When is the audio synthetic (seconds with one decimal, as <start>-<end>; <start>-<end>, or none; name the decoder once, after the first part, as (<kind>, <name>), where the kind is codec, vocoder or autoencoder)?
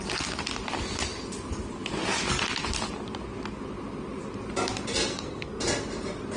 5.1-5.6 (codec, SNAC)